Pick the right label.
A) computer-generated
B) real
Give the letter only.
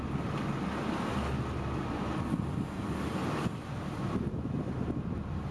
B